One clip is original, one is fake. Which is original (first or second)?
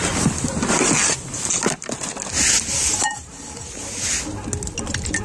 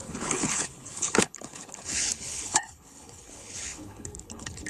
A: first